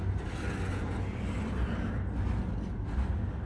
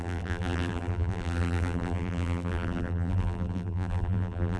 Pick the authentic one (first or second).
first